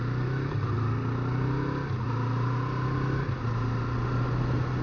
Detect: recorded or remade recorded